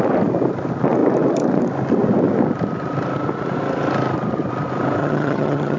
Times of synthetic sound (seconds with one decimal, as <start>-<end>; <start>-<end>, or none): 5.0-5.8